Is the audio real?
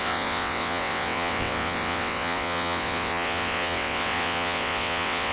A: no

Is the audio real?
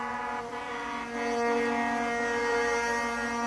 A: yes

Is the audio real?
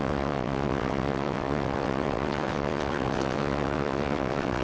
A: no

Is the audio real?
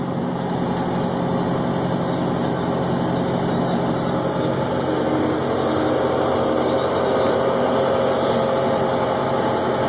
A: yes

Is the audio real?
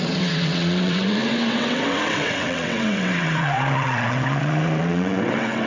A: no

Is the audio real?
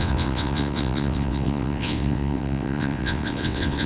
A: no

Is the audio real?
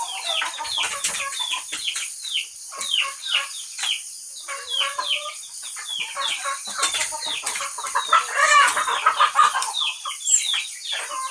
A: yes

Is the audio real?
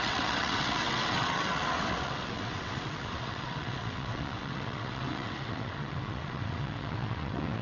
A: no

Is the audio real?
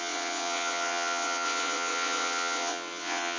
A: no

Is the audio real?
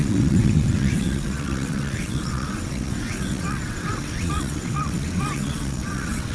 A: no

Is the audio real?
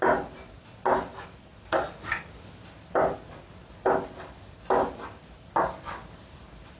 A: yes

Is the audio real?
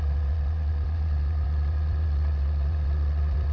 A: no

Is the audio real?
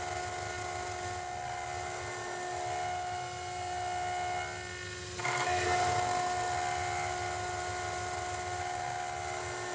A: yes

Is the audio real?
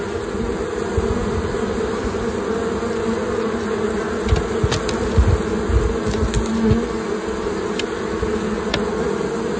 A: yes